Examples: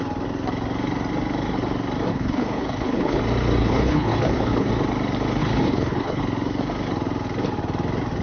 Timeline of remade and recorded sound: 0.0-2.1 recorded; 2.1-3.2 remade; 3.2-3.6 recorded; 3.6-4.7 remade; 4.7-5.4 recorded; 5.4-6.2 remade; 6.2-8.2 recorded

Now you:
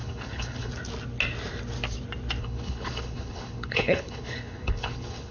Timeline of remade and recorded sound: 0.0-0.7 remade; 0.7-2.4 recorded; 2.4-5.3 remade